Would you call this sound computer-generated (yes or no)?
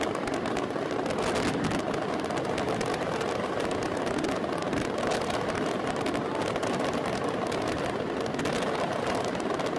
no